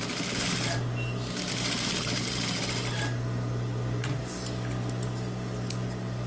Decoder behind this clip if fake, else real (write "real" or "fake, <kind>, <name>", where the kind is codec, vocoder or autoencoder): real